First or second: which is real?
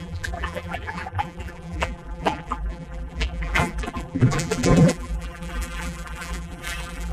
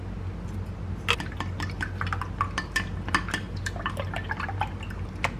second